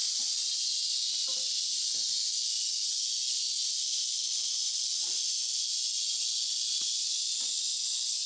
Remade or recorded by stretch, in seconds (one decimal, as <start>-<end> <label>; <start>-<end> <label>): 0.0-1.1 recorded; 1.1-1.8 remade; 1.8-6.7 recorded; 6.7-7.7 remade; 7.7-8.3 recorded